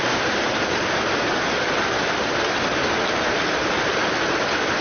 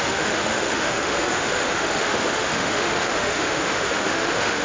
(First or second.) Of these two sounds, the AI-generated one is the second